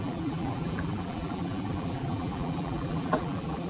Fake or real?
fake